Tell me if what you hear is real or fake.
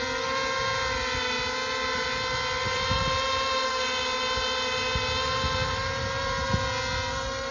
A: real